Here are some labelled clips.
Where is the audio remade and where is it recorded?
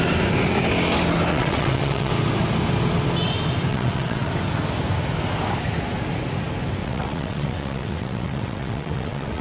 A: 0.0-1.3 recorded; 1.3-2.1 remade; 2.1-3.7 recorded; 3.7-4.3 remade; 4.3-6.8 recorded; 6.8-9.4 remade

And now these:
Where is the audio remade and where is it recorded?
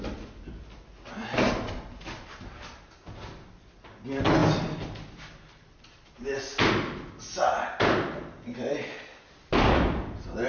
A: 0.0-10.5 recorded